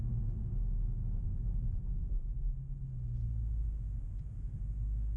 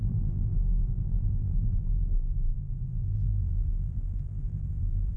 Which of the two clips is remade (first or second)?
second